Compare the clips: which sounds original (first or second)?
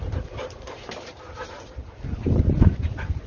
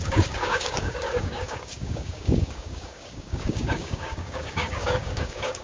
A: first